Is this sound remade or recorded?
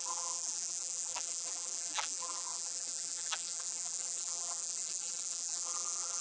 remade